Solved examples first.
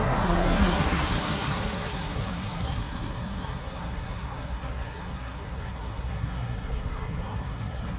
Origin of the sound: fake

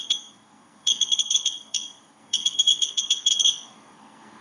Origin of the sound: fake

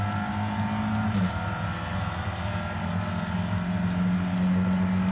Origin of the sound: real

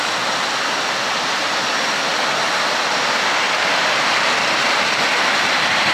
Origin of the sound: real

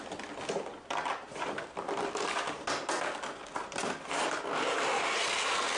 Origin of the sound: real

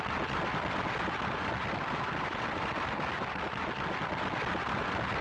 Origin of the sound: real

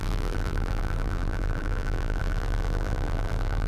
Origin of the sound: fake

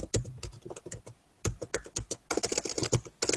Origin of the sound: real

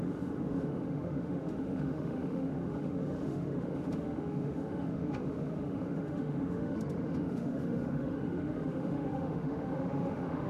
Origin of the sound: fake